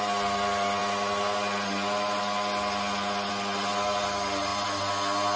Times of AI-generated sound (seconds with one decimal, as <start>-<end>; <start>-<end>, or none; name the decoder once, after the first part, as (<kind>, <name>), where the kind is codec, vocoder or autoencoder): none